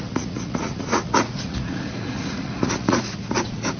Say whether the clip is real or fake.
fake